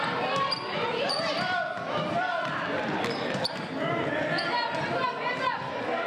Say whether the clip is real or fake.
real